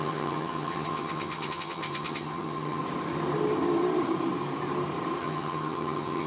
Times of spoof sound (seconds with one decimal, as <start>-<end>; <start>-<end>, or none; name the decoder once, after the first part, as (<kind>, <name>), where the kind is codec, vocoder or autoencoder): 0.0-2.8 (vocoder, HiFi-GAN); 5.2-6.3